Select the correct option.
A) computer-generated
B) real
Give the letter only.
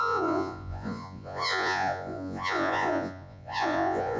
A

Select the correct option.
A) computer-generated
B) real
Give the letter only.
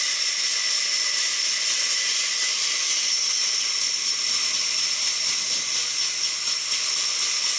B